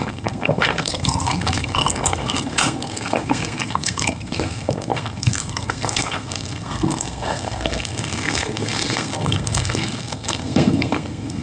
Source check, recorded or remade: remade